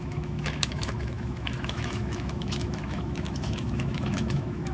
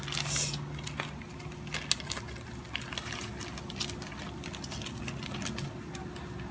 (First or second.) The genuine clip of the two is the second